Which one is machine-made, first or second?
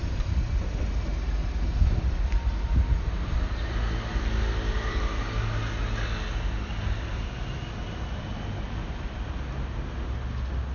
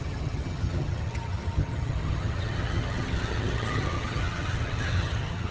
second